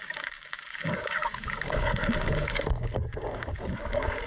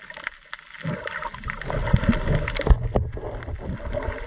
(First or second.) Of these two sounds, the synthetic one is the first